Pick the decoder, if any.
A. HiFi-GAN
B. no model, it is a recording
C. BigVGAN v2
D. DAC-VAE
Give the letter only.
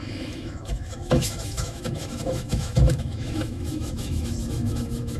D